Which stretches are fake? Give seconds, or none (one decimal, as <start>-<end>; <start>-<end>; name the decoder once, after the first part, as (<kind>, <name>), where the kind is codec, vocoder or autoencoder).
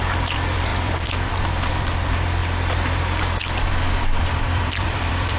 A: 0.0-2.4 (vocoder, BigVGAN v2); 4.4-5.4